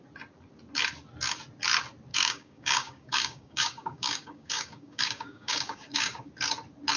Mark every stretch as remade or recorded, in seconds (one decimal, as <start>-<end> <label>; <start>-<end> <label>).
0.0-2.1 recorded; 2.1-6.3 remade; 6.3-7.0 recorded